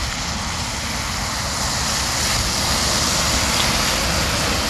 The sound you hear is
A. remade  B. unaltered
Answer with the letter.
B